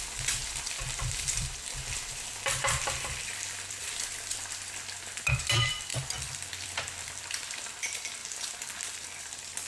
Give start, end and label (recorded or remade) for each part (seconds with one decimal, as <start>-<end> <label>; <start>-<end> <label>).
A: 0.0-5.9 remade; 5.9-6.5 recorded; 6.5-8.2 remade; 8.2-9.2 recorded; 9.2-9.7 remade